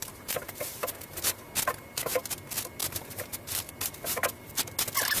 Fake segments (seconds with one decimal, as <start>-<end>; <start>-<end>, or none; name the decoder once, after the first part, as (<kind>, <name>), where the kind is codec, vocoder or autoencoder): 0.0-1.5 (vocoder, BigVGAN v2); 2.8-3.7